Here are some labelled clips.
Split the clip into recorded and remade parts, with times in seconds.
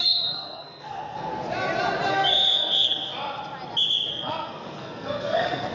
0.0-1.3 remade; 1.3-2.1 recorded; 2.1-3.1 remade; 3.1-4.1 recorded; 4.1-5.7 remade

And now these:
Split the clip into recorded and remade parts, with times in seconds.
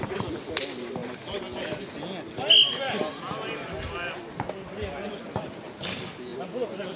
0.0-7.0 recorded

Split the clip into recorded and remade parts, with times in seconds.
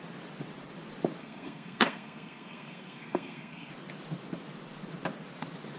0.0-1.2 recorded; 1.2-3.7 remade; 3.7-5.8 recorded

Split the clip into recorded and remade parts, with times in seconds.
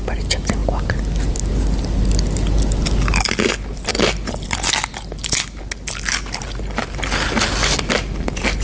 0.0-8.6 recorded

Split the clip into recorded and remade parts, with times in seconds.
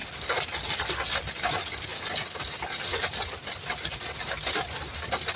0.0-1.2 remade; 1.2-1.9 recorded; 1.9-2.5 remade; 2.5-2.9 recorded; 2.9-4.8 remade; 4.8-5.4 recorded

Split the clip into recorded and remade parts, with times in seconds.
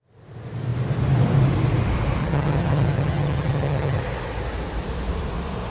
0.0-2.2 recorded; 2.2-4.0 remade; 4.0-5.7 recorded